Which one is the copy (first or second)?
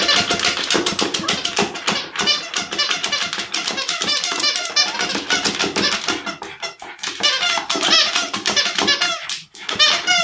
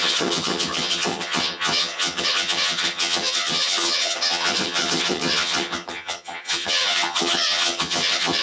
second